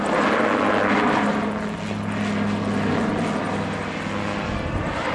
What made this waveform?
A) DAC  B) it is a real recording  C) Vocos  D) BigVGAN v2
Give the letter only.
B